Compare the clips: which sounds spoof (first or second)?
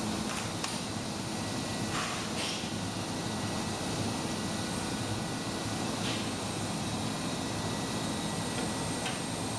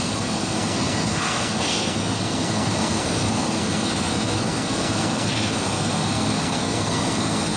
second